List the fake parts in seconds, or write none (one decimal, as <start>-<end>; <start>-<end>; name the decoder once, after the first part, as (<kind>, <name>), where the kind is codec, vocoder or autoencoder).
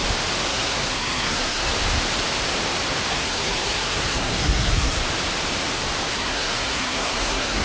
0.5-1.7 (codec, SNAC); 3.1-5.0; 6.1-7.6